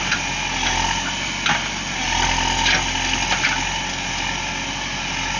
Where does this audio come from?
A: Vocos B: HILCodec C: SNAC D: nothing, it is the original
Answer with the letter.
D